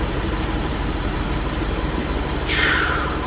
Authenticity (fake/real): fake